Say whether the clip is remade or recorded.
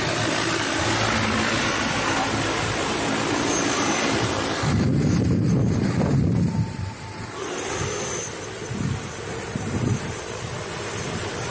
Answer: recorded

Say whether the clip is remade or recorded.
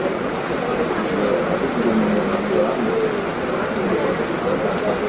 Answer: recorded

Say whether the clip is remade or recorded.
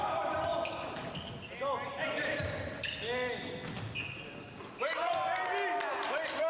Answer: recorded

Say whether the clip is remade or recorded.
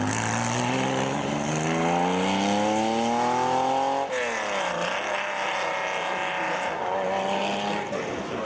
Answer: recorded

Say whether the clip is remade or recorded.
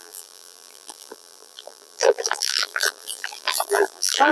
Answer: remade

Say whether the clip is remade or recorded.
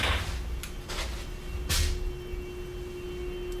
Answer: recorded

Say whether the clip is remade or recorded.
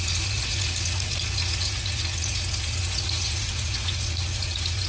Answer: remade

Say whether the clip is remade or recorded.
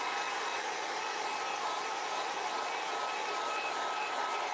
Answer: recorded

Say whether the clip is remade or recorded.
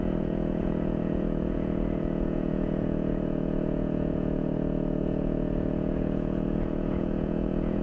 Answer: remade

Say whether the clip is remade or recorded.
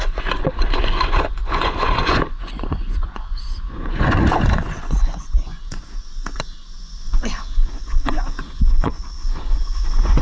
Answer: remade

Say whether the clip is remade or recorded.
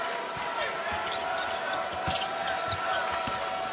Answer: recorded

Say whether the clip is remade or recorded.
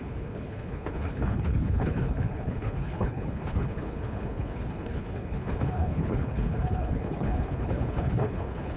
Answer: remade